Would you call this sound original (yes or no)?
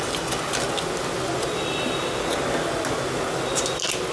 yes